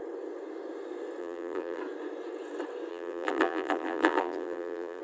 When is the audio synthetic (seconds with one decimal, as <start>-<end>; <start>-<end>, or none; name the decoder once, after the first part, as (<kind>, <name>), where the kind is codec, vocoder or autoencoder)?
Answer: 1.2-1.8 (vocoder, BigVGAN v2); 2.9-5.0